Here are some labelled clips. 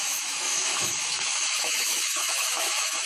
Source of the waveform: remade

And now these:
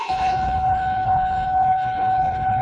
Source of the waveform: remade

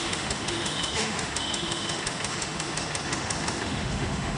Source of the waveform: remade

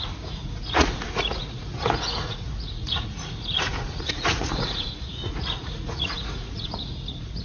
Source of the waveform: remade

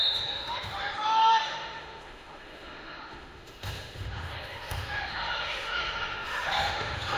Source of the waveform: remade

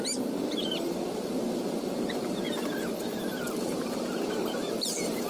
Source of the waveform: remade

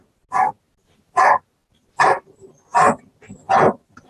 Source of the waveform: recorded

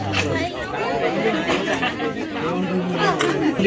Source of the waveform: recorded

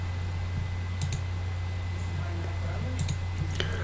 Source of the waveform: recorded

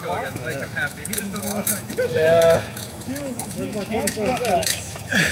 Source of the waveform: remade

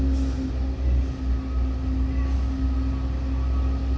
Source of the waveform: recorded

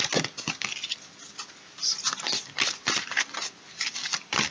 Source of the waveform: remade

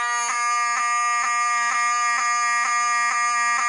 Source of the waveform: recorded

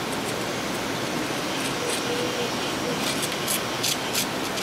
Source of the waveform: recorded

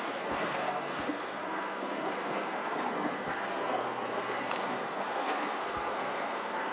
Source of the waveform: remade